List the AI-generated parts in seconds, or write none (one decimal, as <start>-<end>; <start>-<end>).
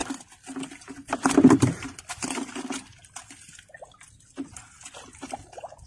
none